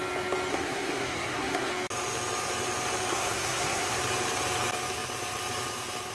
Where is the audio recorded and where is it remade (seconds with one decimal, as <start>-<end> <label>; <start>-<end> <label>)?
0.0-0.5 recorded; 0.5-1.7 remade; 1.7-3.1 recorded; 3.1-3.9 remade; 3.9-6.1 recorded

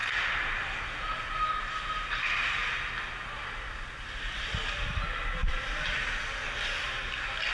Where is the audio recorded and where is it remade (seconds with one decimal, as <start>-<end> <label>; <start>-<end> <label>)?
0.0-2.9 remade; 2.9-5.4 recorded; 5.4-6.2 remade; 6.2-7.5 recorded

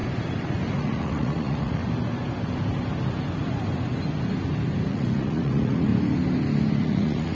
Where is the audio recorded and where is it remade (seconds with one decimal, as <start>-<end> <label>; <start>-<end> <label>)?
0.0-0.8 recorded; 0.8-1.8 remade; 1.8-4.9 recorded; 4.9-5.9 remade; 5.9-6.8 recorded; 6.8-7.3 remade